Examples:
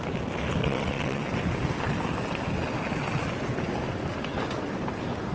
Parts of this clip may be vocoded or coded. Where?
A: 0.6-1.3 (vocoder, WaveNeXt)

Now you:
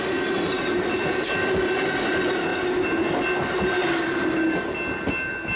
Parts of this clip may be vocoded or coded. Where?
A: none